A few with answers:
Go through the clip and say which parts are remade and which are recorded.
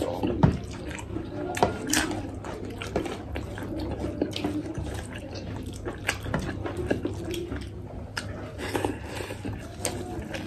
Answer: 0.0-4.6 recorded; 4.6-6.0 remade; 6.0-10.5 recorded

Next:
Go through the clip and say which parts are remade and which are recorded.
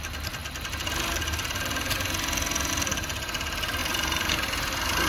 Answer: 0.0-3.8 recorded; 3.8-5.1 remade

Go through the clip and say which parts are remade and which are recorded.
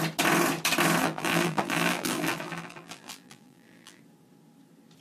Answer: 0.0-1.0 recorded; 1.0-4.0 remade; 4.0-5.0 recorded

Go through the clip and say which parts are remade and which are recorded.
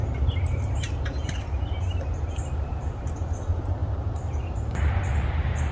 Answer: 0.0-5.7 remade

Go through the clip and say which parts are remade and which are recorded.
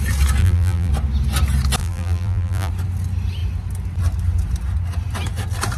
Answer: 0.0-0.4 recorded; 0.4-0.9 remade; 0.9-1.8 recorded; 1.8-2.7 remade; 2.7-5.8 recorded